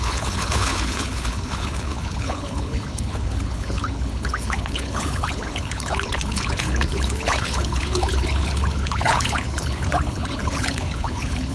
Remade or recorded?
remade